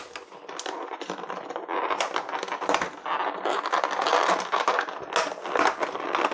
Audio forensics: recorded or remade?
recorded